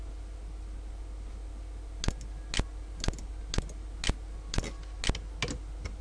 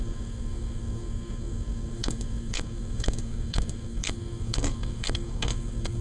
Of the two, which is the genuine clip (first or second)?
first